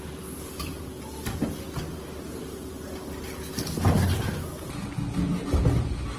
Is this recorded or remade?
recorded